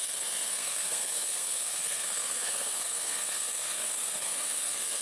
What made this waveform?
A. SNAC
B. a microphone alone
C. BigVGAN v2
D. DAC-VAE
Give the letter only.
A